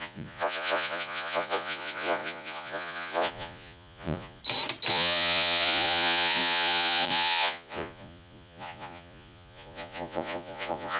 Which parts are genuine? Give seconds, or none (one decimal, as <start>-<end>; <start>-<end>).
4.4-4.9